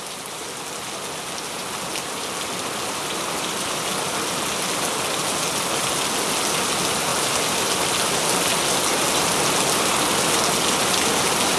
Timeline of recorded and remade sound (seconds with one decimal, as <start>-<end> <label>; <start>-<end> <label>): 0.0-11.6 recorded